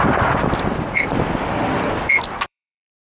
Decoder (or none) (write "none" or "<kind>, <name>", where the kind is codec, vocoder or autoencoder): vocoder, BigVGAN v2